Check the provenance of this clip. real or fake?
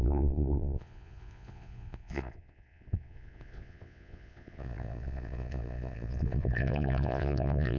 fake